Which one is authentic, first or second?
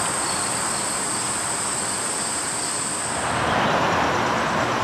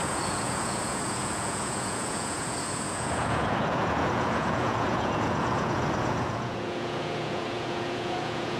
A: first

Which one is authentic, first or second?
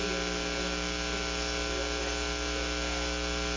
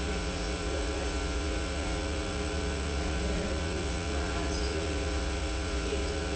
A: first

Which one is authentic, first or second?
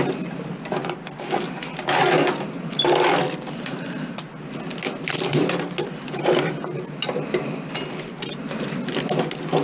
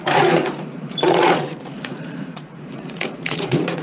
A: first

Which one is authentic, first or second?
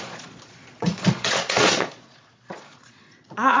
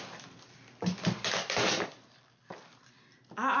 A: second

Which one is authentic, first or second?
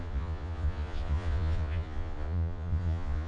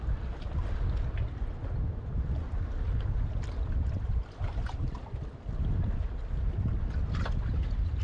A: second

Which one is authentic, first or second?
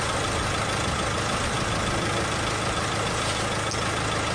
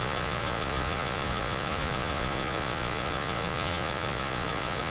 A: first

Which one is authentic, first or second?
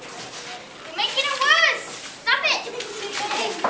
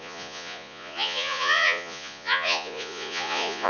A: first